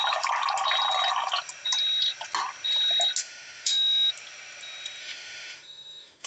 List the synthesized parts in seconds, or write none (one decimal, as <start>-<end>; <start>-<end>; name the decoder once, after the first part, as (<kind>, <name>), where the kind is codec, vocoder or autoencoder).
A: 3.2-4.1 (autoencoder, DAC-VAE); 5.0-6.3